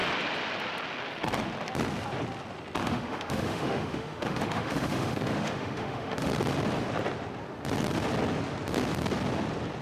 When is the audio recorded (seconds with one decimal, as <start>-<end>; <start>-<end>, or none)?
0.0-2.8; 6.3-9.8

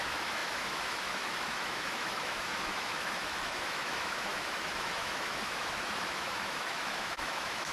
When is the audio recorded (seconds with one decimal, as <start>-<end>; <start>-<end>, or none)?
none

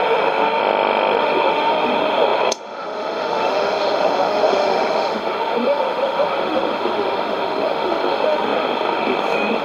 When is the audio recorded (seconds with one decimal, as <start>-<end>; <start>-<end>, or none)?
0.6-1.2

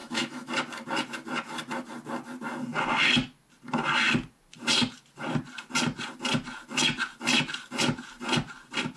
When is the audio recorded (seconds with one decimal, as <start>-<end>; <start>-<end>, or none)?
0.5-9.0